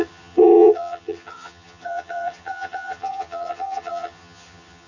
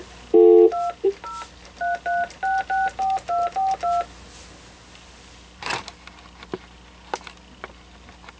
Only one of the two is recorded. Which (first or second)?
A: second